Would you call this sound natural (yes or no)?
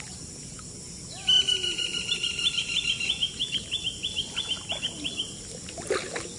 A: yes